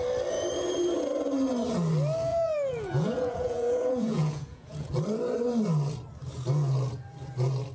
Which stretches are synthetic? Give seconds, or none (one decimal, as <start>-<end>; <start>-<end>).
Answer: 2.3-4.9